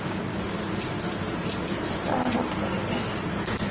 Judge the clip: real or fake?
real